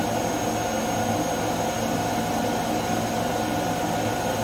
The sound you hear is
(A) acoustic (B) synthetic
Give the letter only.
A